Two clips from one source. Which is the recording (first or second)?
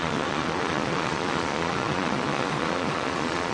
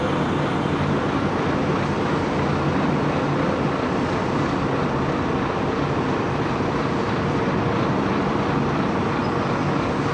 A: second